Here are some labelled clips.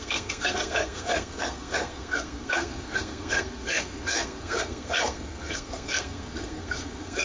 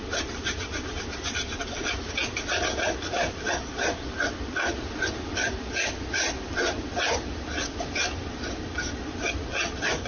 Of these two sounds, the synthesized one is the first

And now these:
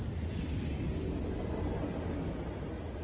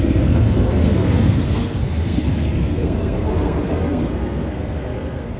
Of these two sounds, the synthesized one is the second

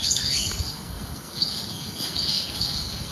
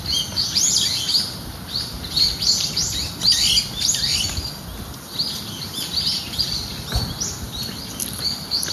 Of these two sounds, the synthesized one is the first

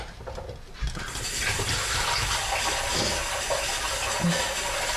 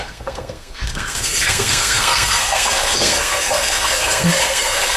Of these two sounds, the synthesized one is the second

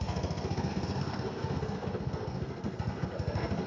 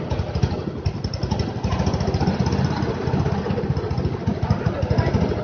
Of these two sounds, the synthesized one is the first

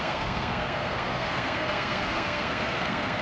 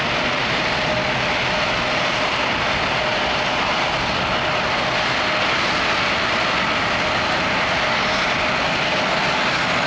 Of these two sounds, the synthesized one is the first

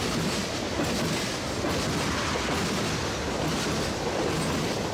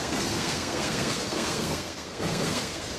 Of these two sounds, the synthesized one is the second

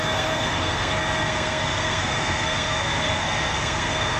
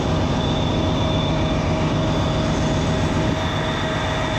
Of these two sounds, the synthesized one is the first